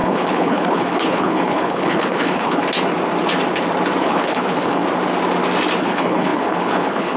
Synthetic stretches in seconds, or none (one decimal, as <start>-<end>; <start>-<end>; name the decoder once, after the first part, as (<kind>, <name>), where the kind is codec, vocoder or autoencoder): 0.0-2.6 (codec, HILCodec); 4.0-4.8; 5.8-7.2